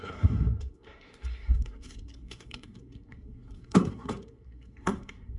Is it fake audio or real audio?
fake